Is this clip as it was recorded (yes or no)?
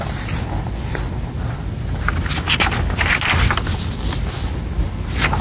yes